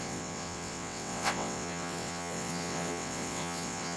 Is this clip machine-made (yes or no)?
yes